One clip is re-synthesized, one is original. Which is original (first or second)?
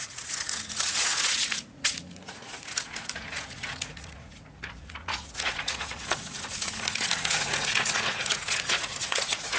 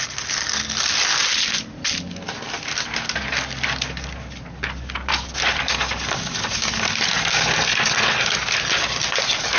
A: second